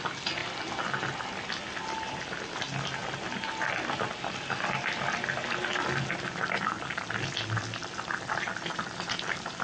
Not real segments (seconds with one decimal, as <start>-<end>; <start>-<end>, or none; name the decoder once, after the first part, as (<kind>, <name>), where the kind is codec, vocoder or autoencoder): none